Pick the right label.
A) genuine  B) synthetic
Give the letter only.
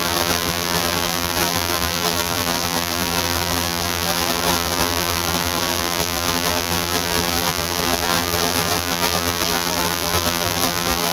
B